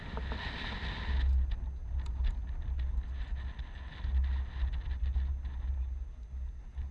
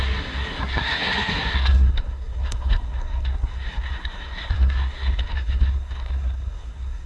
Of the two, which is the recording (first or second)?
first